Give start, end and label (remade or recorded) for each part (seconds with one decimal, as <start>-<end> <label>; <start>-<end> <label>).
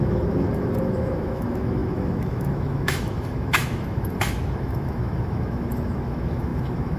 0.0-7.0 remade